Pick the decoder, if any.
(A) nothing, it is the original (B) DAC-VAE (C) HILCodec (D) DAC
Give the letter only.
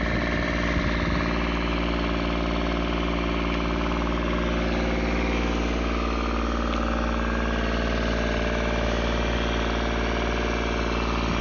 A